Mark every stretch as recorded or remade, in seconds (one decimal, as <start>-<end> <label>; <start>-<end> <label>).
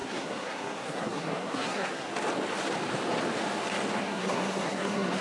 0.0-2.1 remade; 2.1-4.0 recorded; 4.0-5.2 remade